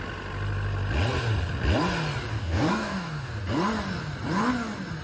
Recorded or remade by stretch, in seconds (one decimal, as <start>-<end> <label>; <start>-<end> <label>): 0.0-2.3 recorded; 2.3-3.3 remade; 3.3-5.0 recorded